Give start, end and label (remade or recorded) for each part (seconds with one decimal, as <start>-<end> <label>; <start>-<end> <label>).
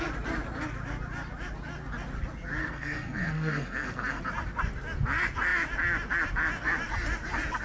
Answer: 0.0-2.6 recorded; 2.6-4.2 remade; 4.2-7.6 recorded